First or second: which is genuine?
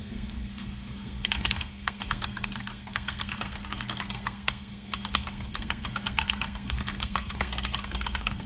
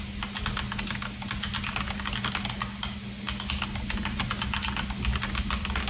second